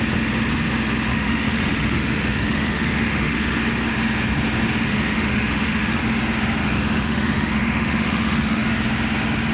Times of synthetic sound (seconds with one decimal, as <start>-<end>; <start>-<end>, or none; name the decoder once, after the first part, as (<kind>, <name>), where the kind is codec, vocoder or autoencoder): 1.1-3.6 (autoencoder, DAC-VAE); 4.9-6.0; 6.6-8.6

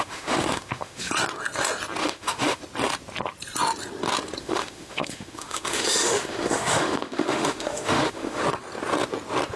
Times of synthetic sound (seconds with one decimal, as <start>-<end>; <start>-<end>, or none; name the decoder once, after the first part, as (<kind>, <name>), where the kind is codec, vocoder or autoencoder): 0.0-1.1 (autoencoder, DAC-VAE); 2.0-2.6; 4.4-8.4

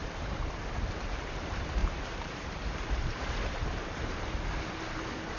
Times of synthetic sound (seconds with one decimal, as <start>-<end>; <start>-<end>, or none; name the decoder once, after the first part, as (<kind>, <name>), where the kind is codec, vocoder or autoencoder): 0.0-0.7 (vocoder, BigVGAN v2); 1.8-3.3

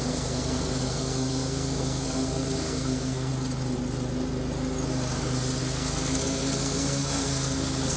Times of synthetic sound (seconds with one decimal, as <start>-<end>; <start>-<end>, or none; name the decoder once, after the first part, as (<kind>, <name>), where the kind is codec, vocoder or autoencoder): 0.0-3.3 (codec, SNAC); 5.6-8.0

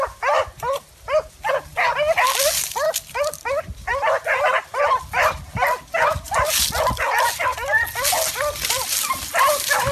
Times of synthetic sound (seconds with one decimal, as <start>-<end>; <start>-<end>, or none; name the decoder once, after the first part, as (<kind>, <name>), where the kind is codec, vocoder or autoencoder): none

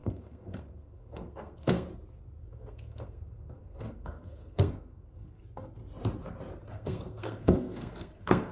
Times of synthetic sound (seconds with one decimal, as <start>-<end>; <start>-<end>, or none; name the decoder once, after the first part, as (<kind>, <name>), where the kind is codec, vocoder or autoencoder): 0.0-1.9 (codec, SNAC); 2.4-5.8; 6.7-8.5

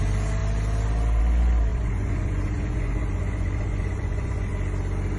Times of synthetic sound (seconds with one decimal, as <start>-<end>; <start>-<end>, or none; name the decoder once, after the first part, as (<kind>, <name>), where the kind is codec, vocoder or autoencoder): 1.7-4.5 (vocoder, Vocos)